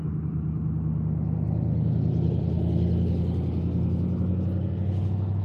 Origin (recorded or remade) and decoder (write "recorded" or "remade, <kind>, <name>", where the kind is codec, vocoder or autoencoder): recorded